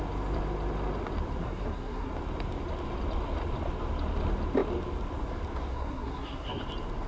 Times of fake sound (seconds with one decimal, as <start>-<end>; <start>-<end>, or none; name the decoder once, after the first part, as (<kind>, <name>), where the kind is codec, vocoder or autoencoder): 1.4-2.1 (codec, SNAC); 5.7-6.6